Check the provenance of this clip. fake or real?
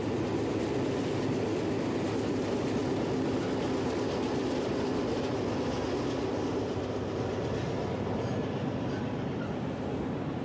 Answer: real